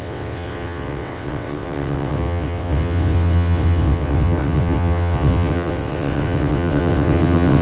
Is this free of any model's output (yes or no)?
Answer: no